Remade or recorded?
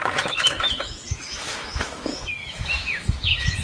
remade